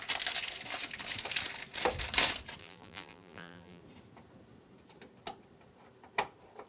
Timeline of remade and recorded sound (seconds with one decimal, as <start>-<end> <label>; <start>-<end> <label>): 0.0-2.6 recorded; 2.6-3.8 remade; 3.8-6.7 recorded